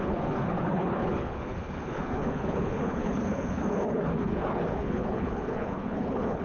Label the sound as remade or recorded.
remade